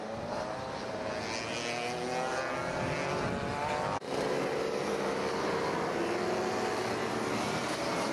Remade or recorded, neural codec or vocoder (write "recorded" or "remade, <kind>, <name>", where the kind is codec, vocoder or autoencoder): recorded